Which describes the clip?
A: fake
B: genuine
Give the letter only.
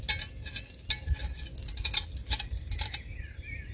B